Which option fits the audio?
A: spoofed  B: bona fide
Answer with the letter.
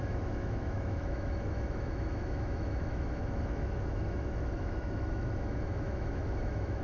A